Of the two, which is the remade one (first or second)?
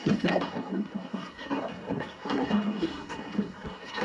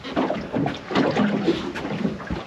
first